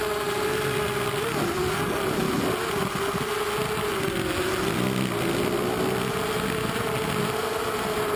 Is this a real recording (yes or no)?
yes